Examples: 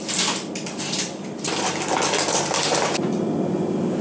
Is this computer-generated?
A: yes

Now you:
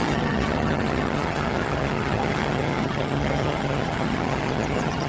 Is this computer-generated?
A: yes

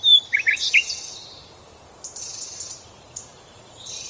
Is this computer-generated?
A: yes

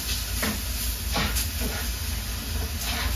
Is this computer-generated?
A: no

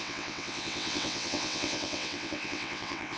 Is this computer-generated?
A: yes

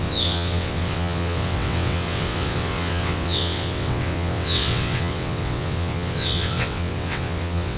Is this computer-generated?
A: yes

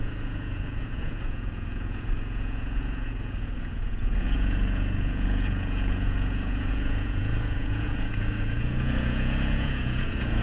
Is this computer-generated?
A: yes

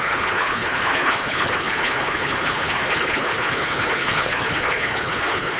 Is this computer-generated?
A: yes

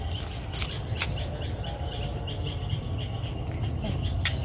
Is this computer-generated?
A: no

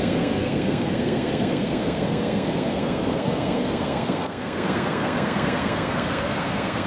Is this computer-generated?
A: yes